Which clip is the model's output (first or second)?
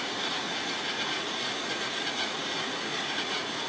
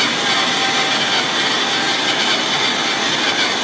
first